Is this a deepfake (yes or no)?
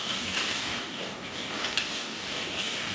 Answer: yes